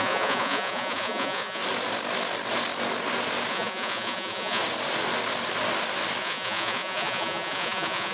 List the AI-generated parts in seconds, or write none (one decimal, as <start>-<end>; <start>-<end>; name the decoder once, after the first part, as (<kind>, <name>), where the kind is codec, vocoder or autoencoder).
0.0-1.6 (vocoder, Vocos); 3.5-4.6; 6.2-8.1